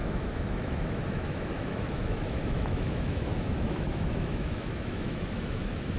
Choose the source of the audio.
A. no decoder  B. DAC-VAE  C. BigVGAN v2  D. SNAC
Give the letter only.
B